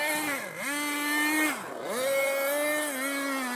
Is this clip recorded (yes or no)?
yes